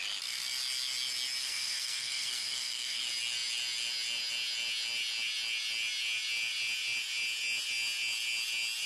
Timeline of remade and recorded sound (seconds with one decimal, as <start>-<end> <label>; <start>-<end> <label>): 0.0-1.4 recorded; 1.4-3.0 remade; 3.0-8.9 recorded